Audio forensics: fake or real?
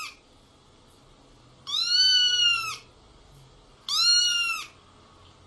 real